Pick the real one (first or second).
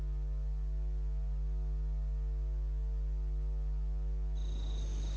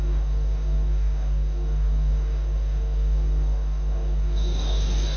first